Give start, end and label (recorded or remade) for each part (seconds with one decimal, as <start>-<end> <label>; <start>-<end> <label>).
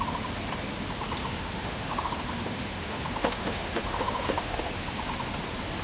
0.0-1.2 recorded; 1.2-4.7 remade; 4.7-5.8 recorded